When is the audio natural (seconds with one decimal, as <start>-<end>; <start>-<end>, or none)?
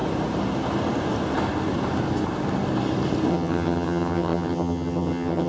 0.0-3.3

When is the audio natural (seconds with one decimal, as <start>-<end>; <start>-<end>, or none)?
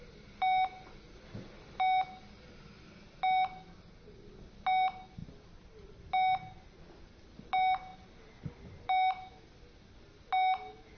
0.0-11.0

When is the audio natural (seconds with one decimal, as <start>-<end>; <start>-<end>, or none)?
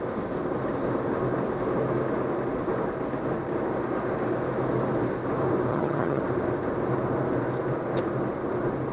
0.0-5.7; 6.2-8.9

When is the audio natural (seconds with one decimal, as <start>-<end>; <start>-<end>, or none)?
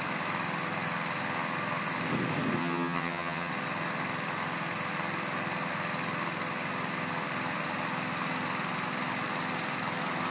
0.0-2.6; 3.5-10.3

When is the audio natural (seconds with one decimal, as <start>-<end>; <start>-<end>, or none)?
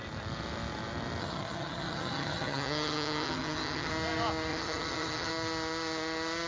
0.0-1.2; 3.9-4.5; 5.3-6.5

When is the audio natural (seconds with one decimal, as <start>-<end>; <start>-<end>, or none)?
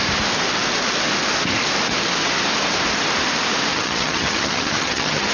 0.0-3.7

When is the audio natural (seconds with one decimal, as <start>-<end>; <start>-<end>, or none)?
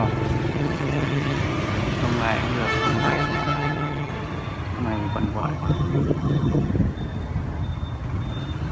0.0-0.5; 1.4-2.9; 4.1-5.4; 6.7-8.7